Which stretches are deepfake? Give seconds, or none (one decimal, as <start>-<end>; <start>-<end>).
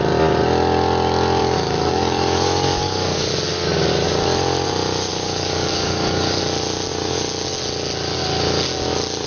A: 1.4-3.3; 5.1-6.4